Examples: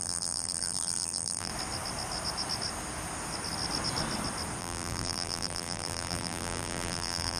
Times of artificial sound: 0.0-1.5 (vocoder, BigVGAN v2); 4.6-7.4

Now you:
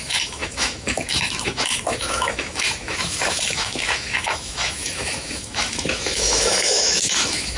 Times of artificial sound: 0.0-7.6 (autoencoder, DAC-VAE)

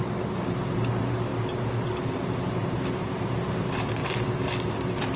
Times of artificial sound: 0.0-1.3 (vocoder, BigVGAN v2); 2.1-4.0

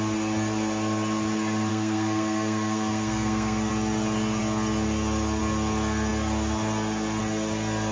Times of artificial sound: 1.7-3.7 (codec, SNAC)

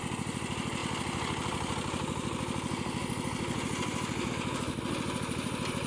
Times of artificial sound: none

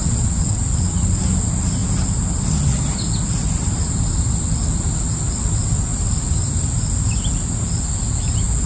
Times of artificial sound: 0.0-0.6 (vocoder, WaveNeXt)

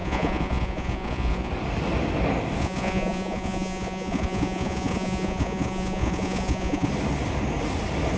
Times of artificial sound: 0.0-1.5 (vocoder, Vocos); 2.6-6.9